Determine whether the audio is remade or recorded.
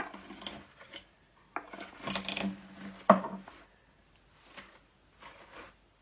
recorded